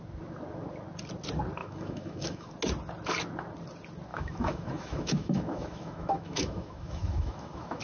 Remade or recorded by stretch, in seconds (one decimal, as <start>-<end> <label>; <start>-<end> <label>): 0.0-1.6 recorded; 1.6-2.5 remade; 2.5-4.1 recorded; 4.1-7.8 remade